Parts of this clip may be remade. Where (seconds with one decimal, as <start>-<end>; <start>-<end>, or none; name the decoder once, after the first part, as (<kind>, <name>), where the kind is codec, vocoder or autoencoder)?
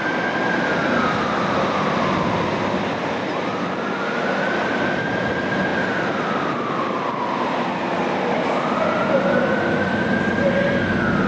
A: none